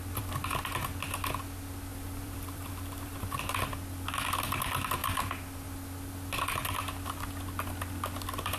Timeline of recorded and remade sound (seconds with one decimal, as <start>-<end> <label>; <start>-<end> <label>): 0.0-1.9 recorded; 1.9-3.4 remade; 3.4-8.6 recorded